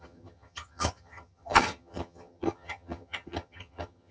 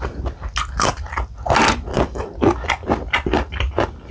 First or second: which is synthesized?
first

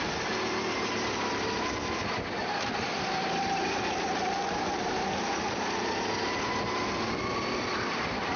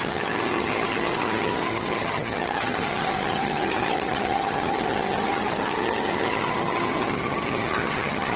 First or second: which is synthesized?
second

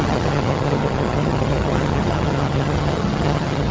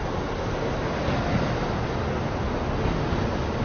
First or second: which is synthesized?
first